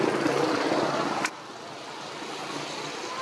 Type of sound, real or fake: real